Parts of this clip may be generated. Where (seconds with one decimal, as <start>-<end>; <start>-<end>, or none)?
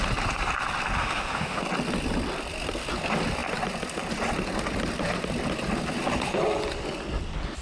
1.0-1.6